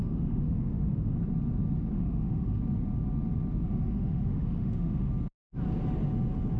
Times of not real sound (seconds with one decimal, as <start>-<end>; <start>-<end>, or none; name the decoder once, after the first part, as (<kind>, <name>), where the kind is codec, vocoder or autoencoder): 0.0-1.2 (autoencoder, DAC-VAE); 1.9-2.6; 3.6-5.1